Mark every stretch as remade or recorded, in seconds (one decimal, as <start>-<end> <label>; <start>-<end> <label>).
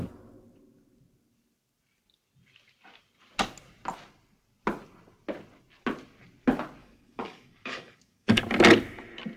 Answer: 0.0-6.8 recorded; 6.8-8.4 remade; 8.4-9.4 recorded